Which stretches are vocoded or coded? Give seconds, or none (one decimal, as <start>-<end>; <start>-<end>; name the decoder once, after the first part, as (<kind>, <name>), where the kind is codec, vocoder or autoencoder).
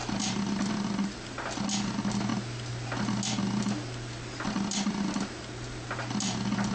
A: none